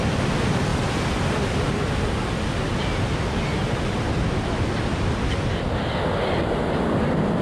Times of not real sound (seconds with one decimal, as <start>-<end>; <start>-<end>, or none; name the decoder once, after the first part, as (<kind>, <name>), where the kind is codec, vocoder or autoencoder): none